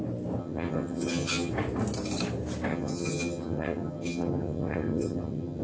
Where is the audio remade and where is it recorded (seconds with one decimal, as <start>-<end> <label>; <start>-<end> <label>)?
0.0-0.4 recorded; 0.4-1.5 remade; 1.5-2.7 recorded; 2.7-5.6 remade